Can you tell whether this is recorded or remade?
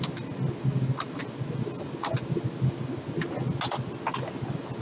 recorded